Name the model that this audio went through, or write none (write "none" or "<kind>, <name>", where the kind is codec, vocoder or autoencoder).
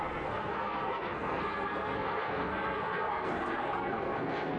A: codec, SNAC